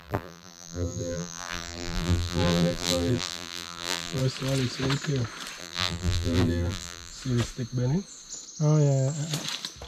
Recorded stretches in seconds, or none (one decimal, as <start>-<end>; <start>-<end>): 4.2-5.6; 7.1-9.9